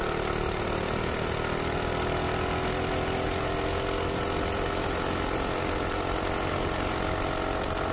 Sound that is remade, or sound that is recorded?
recorded